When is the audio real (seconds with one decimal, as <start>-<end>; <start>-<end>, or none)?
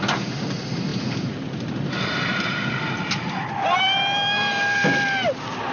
0.0-0.9; 2.9-5.7